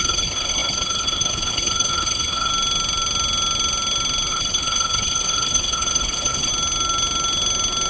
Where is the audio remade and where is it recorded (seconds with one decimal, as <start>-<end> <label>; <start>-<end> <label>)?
0.0-2.5 remade; 2.5-4.3 recorded; 4.3-6.5 remade; 6.5-7.9 recorded